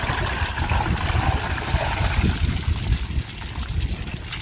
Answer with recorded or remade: recorded